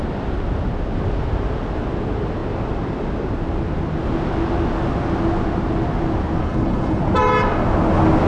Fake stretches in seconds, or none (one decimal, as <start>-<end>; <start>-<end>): 6.4-7.0